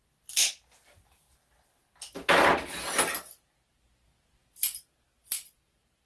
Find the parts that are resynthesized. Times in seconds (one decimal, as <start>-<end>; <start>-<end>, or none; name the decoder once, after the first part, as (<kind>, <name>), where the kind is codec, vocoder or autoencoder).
none